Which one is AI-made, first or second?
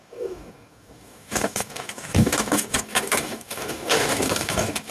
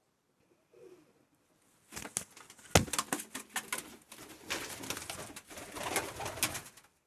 first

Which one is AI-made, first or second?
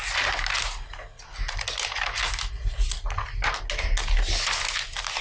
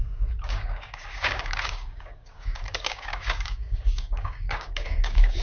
second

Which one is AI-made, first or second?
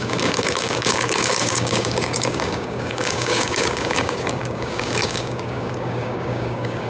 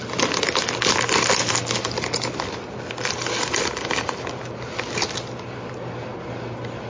first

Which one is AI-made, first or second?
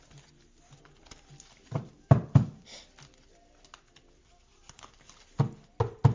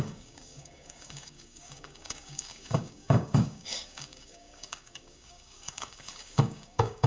second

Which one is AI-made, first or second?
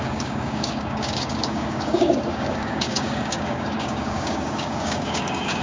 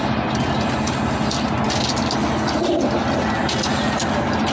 first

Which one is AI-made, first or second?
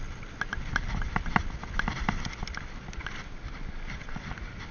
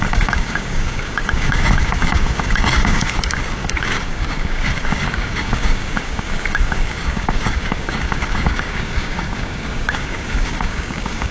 second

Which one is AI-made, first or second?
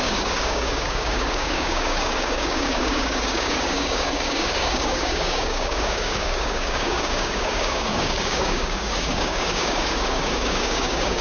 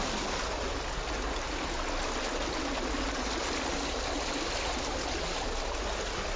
first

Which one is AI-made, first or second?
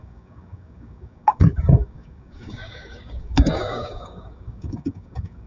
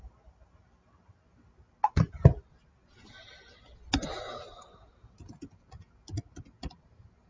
first